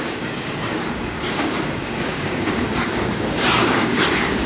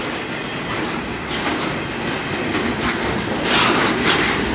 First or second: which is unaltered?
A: second